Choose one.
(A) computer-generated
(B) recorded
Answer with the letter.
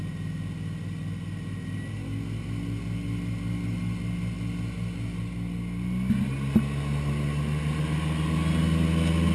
B